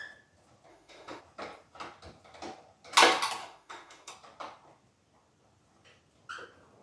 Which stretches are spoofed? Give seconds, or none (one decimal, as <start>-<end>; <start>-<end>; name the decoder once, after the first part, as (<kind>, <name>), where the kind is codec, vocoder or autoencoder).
0.7-1.2 (autoencoder, DAC-VAE); 3.4-4.1

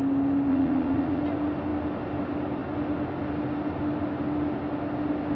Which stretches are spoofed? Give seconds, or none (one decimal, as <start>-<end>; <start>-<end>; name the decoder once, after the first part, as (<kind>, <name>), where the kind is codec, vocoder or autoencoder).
0.5-1.2 (vocoder, Vocos)